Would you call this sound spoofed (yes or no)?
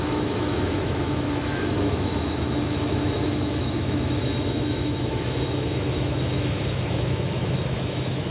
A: yes